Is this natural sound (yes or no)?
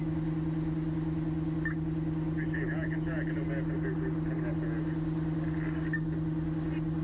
yes